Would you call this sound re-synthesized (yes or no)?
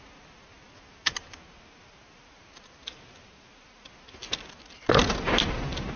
no